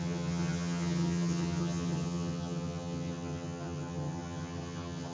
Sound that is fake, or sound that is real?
fake